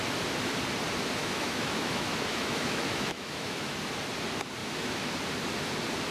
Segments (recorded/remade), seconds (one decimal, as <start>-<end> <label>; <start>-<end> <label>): 0.0-1.2 recorded; 1.2-3.7 remade; 3.7-4.6 recorded; 4.6-5.1 remade; 5.1-6.1 recorded